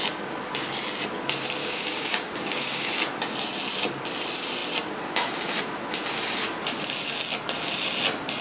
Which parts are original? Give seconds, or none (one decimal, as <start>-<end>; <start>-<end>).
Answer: 0.0-1.6; 2.9-8.4